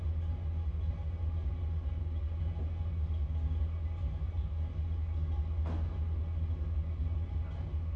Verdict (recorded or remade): recorded